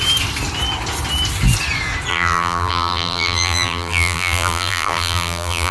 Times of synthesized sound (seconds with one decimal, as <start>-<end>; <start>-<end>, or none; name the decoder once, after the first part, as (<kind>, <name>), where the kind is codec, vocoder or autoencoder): 2.1-5.7 (vocoder, BigVGAN v2)